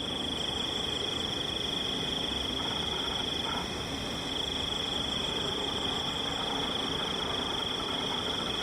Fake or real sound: fake